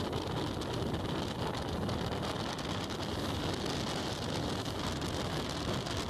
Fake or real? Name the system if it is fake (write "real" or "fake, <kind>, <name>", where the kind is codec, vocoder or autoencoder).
real